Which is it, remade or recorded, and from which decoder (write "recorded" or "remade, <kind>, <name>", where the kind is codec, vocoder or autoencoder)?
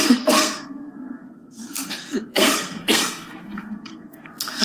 remade, codec, SNAC